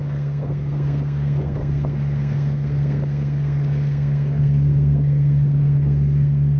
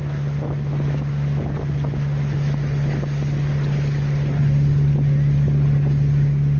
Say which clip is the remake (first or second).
first